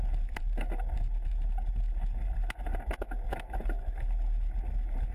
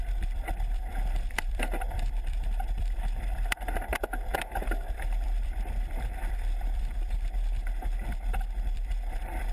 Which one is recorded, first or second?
first